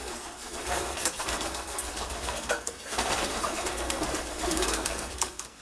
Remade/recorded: remade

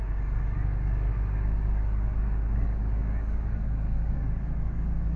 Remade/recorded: remade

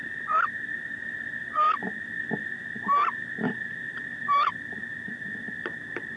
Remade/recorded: recorded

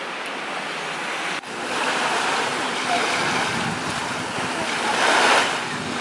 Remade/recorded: recorded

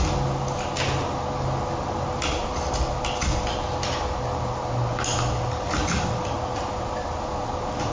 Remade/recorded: recorded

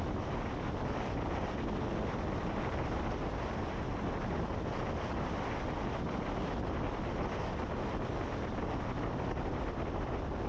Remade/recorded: recorded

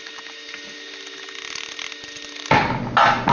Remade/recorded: recorded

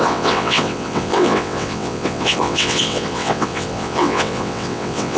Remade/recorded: remade